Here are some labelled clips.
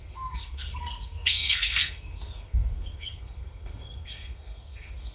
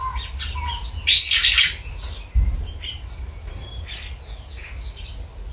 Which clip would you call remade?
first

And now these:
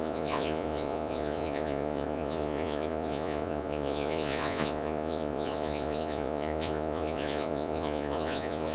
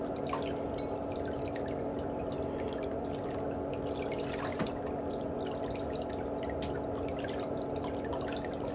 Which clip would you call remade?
first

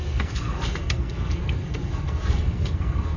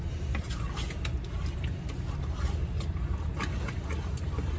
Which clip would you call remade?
first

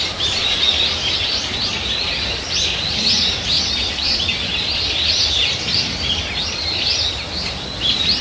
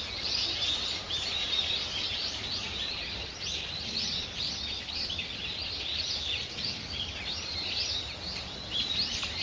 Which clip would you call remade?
second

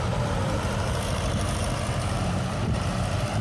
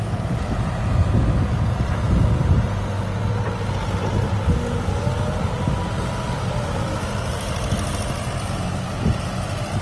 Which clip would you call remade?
first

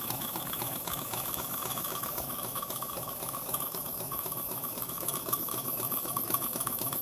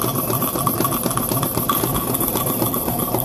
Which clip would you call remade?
first